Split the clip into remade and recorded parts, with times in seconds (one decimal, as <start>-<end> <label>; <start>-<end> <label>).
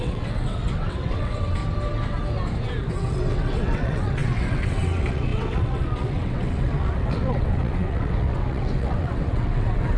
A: 0.0-1.6 remade; 1.6-2.9 recorded; 2.9-10.0 remade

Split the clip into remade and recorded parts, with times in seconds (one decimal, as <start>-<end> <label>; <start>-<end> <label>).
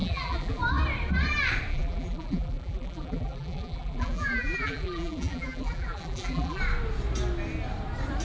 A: 0.0-0.6 remade; 0.6-1.7 recorded; 1.7-6.6 remade; 6.6-8.2 recorded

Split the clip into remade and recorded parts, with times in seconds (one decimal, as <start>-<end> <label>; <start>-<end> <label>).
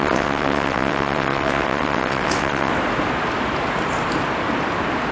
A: 0.0-2.7 remade; 2.7-5.1 recorded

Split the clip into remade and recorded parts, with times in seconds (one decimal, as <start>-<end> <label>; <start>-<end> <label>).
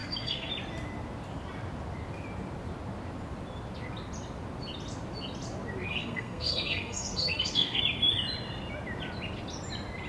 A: 0.0-0.5 remade; 0.5-5.9 recorded; 5.9-7.8 remade; 7.8-10.1 recorded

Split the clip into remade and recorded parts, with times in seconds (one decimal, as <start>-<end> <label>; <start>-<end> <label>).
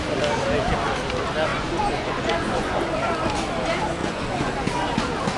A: 0.0-1.5 recorded; 1.5-2.8 remade; 2.8-4.0 recorded; 4.0-4.5 remade; 4.5-5.4 recorded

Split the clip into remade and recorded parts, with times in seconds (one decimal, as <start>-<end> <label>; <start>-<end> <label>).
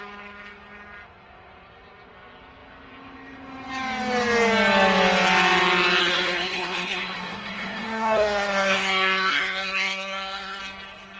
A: 0.0-6.0 recorded; 6.0-10.6 remade; 10.6-11.2 recorded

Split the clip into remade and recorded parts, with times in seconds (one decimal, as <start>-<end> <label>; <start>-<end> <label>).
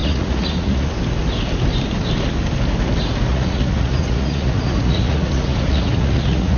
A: 0.0-0.9 remade; 0.9-3.3 recorded; 3.3-6.6 remade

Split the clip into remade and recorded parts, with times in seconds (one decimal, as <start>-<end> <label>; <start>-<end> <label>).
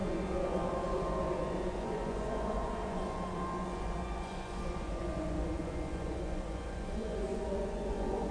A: 0.0-8.3 remade